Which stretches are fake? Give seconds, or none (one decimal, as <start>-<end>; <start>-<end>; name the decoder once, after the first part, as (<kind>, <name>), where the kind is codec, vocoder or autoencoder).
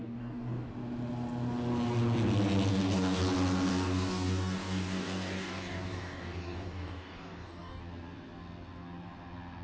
0.0-0.7 (codec, DAC); 2.7-3.2; 3.7-7.8